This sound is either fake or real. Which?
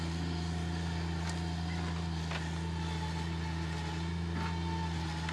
real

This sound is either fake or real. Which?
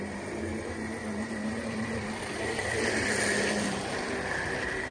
real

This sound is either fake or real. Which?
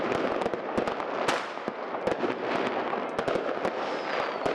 real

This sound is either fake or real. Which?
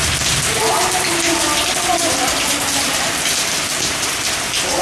real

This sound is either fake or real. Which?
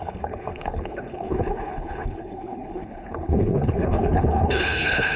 fake